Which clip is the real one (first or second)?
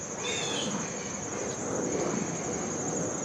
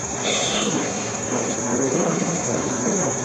first